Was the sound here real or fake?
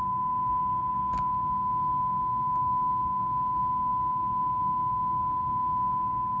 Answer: fake